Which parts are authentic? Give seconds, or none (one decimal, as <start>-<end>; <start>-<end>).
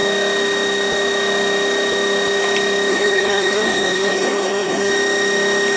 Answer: 0.0-2.9; 4.9-5.8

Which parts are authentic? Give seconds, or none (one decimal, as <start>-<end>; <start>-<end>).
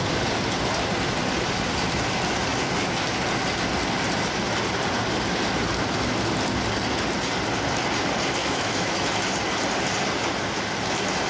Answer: 0.0-8.4; 9.0-11.3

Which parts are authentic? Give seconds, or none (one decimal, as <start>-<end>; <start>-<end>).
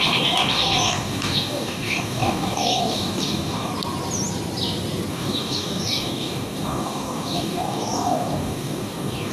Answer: 3.7-5.1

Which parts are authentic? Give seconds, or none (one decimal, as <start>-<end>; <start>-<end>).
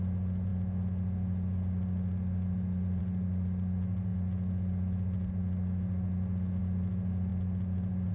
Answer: 0.0-8.1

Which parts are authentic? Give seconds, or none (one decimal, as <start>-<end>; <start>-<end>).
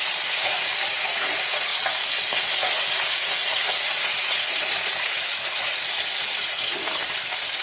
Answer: 1.7-2.2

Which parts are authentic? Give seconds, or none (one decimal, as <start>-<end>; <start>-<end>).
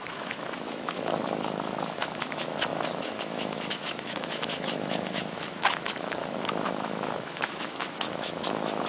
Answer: none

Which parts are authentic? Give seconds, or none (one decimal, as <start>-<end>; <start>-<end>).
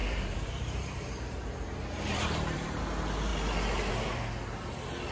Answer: 2.8-5.1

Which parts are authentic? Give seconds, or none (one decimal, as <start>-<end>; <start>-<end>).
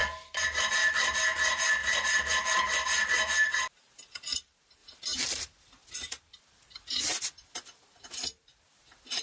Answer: 0.6-1.8; 2.3-4.8; 5.4-9.2